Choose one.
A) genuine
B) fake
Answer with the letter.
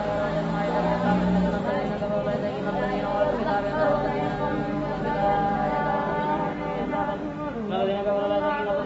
A